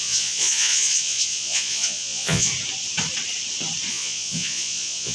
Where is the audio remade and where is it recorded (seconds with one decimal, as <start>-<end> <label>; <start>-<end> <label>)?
0.0-2.5 remade; 2.5-3.9 recorded; 3.9-5.1 remade